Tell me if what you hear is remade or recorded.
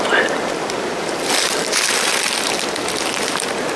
remade